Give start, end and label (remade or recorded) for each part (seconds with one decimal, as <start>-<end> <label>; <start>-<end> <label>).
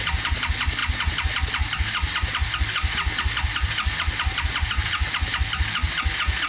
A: 0.0-6.5 recorded